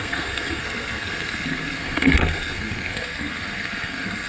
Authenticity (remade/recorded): remade